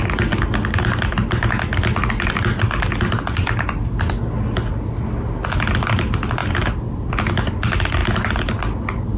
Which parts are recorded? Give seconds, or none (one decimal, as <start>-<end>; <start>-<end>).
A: 0.0-9.2